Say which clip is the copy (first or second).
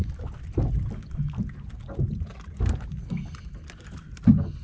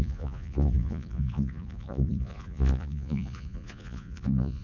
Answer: second